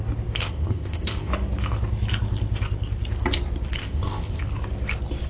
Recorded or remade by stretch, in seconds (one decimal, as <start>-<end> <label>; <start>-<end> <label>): 0.0-0.4 recorded; 0.4-1.3 remade; 1.3-3.8 recorded; 3.8-4.4 remade; 4.4-5.3 recorded